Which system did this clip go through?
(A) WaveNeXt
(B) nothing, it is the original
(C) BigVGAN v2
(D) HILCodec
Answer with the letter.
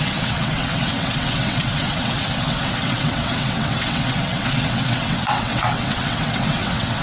A